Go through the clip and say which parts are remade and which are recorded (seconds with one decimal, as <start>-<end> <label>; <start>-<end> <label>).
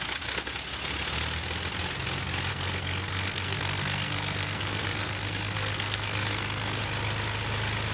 0.0-2.5 recorded; 2.5-6.8 remade; 6.8-7.9 recorded